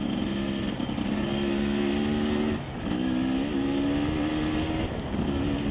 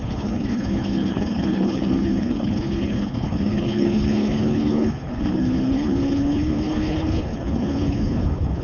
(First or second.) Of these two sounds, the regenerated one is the second